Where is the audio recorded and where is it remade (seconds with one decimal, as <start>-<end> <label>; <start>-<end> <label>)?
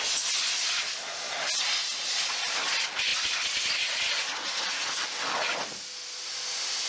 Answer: 0.0-6.9 recorded